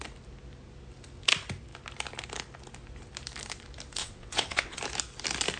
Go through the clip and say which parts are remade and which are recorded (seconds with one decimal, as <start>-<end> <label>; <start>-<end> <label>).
0.0-4.0 recorded; 4.0-4.8 remade; 4.8-5.6 recorded